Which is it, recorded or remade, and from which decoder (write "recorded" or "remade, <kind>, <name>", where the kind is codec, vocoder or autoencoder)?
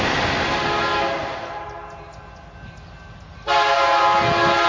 recorded